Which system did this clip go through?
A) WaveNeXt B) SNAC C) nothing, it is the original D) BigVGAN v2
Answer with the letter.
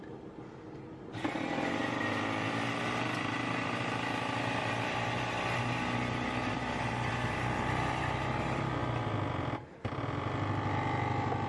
C